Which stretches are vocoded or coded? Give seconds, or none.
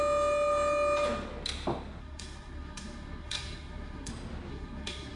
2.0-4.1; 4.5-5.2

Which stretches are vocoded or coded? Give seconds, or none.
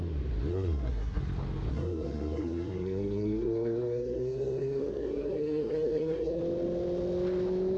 0.5-1.2; 1.7-6.4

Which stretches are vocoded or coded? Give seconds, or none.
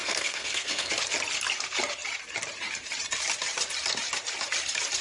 0.0-0.9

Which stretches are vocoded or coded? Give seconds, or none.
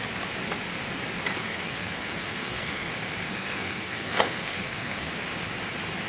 1.4-2.9; 3.3-5.1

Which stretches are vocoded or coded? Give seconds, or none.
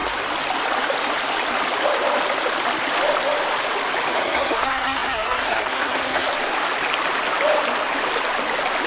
4.1-6.3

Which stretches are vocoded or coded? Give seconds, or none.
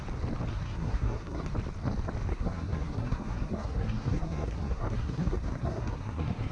0.5-1.5; 2.3-6.5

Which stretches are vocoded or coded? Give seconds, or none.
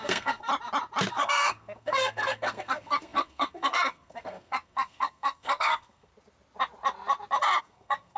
0.0-0.5; 1.1-6.1; 7.6-8.2